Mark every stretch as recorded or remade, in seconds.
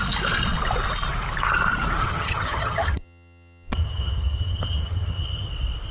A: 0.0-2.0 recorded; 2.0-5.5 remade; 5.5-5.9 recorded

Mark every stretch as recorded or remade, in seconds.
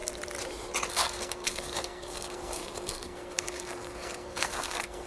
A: 0.0-0.9 recorded; 0.9-5.1 remade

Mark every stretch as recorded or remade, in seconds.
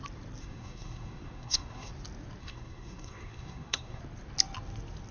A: 0.0-0.4 recorded; 0.4-1.9 remade; 1.9-2.4 recorded; 2.4-4.0 remade; 4.0-5.1 recorded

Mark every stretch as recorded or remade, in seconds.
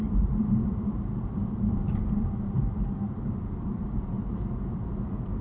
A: 0.0-5.4 remade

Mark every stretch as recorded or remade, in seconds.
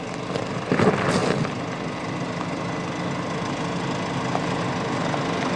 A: 0.0-5.6 recorded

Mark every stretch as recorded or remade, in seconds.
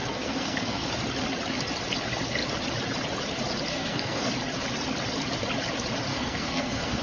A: 0.0-0.9 remade; 0.9-3.7 recorded; 3.7-4.3 remade; 4.3-6.1 recorded; 6.1-7.0 remade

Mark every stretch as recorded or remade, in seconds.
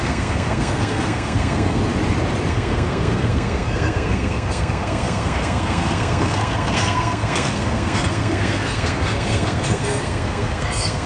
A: 0.0-1.8 remade; 1.8-2.5 recorded; 2.5-11.1 remade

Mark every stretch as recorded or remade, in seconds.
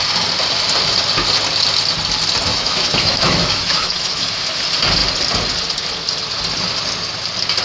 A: 0.0-2.5 recorded; 2.5-4.3 remade; 4.3-7.6 recorded